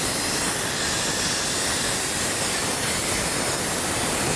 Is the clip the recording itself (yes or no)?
yes